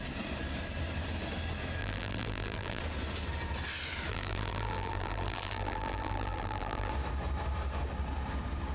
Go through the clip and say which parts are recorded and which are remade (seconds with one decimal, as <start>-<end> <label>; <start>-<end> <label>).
0.0-1.8 recorded; 1.8-2.8 remade; 2.8-4.1 recorded; 4.1-6.9 remade; 6.9-8.7 recorded